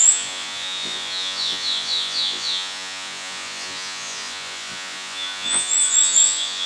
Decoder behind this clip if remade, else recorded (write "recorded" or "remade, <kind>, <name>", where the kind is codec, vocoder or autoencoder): remade, vocoder, Vocos